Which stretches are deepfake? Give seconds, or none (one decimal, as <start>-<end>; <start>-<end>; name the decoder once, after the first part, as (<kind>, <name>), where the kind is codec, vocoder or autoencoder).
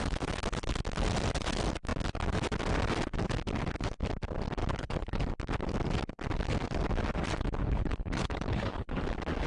4.6-5.2 (codec, HILCodec); 7.6-9.0